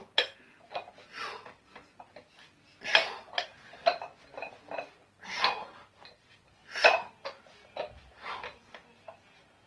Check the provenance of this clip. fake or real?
real